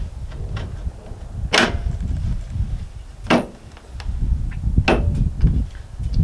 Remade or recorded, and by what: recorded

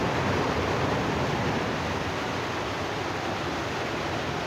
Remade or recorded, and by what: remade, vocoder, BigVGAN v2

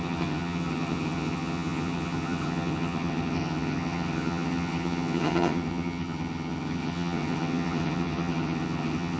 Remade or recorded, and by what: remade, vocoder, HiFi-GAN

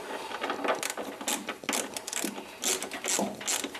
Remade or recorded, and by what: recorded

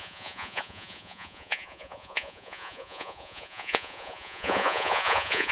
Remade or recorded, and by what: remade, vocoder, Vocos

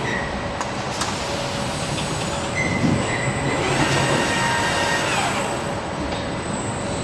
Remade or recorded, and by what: recorded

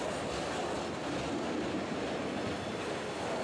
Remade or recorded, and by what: recorded